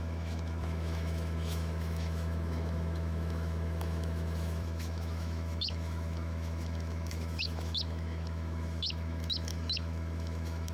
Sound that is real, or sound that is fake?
fake